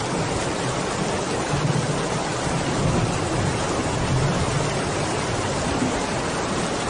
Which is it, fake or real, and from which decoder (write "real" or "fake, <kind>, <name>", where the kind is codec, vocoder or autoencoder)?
real